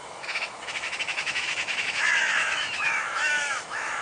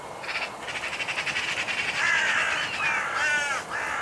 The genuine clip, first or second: second